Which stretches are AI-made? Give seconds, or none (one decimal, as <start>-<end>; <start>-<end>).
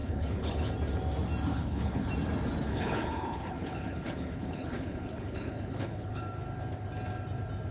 0.0-0.7; 1.5-2.1; 2.7-6.2